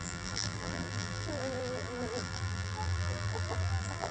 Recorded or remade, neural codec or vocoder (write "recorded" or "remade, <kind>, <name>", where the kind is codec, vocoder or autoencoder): remade, vocoder, BigVGAN v2